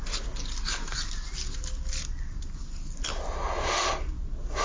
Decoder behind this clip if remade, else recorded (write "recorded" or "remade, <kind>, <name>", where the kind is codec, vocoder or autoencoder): recorded